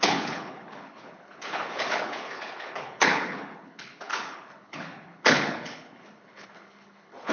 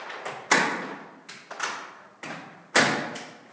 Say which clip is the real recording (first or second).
second